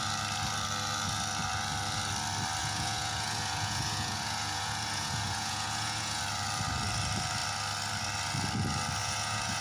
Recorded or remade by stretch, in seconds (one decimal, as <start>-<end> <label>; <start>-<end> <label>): 0.0-2.6 recorded; 2.6-6.2 remade; 6.2-9.0 recorded; 9.0-9.6 remade